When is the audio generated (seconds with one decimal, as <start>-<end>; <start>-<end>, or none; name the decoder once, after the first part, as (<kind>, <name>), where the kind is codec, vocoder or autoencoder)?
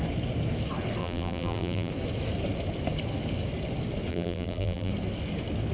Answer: 1.0-1.9 (vocoder, BigVGAN v2); 4.1-4.9